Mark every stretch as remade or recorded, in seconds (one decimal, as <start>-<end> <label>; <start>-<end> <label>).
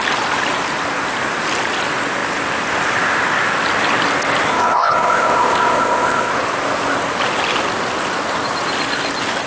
0.0-4.5 recorded; 4.5-6.3 remade; 6.3-9.5 recorded